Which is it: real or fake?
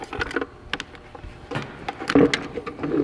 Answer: real